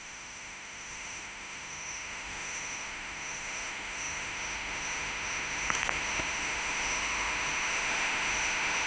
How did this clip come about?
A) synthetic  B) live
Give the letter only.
A